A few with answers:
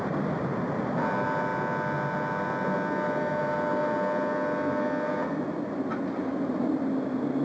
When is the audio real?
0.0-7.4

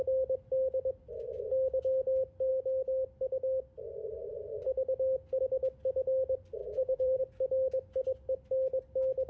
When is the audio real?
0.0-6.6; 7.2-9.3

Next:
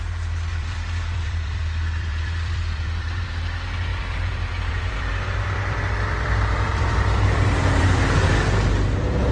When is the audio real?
0.0-0.5; 3.4-3.9; 8.3-9.3

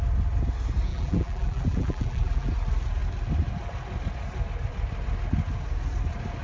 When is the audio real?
0.0-0.9; 2.5-6.4

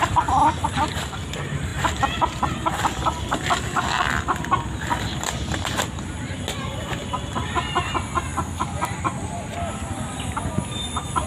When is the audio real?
0.0-1.7; 2.7-11.3

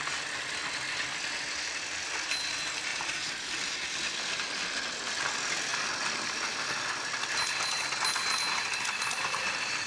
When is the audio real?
0.0-2.9; 3.5-9.9